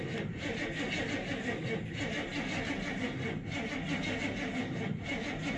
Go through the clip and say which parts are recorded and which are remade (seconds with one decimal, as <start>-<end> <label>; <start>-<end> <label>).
0.0-5.6 recorded